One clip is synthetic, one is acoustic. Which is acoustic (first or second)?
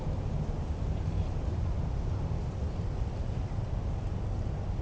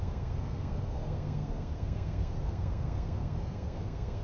first